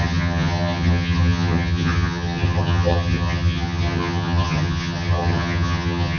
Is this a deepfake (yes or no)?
yes